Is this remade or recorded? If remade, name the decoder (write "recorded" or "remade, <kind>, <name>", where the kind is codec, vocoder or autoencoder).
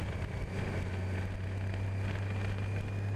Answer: recorded